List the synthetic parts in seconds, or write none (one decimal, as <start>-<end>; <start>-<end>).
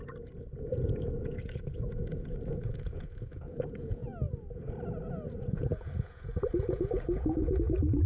0.0-4.0; 5.4-8.1